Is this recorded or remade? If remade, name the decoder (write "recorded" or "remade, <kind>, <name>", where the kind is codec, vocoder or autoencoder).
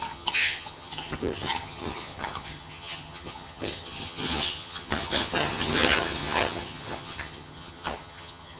remade, vocoder, HiFi-GAN